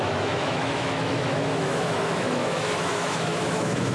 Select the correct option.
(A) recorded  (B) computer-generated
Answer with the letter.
B